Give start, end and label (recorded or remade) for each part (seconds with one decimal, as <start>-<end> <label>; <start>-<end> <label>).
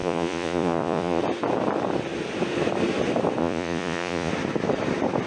0.0-1.2 remade; 1.2-3.4 recorded; 3.4-4.3 remade; 4.3-5.3 recorded